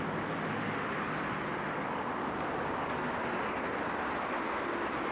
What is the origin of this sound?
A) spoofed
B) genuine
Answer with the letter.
B